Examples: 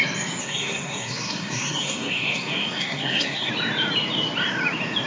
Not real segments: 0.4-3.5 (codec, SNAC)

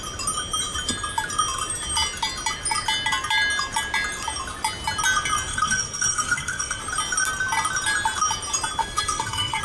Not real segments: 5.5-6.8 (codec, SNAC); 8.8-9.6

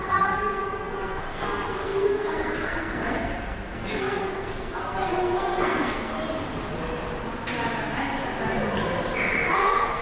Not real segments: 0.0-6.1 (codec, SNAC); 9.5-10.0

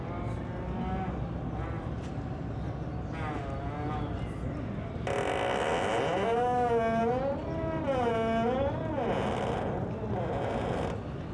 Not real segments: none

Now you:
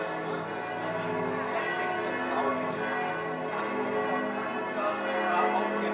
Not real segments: none

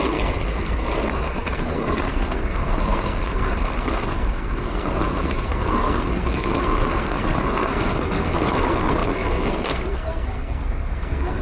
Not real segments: 0.0-11.4 (codec, SNAC)

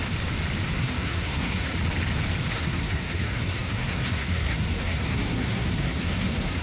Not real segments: 0.8-1.7 (codec, SNAC); 2.5-6.6